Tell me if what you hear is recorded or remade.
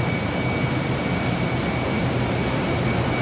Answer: recorded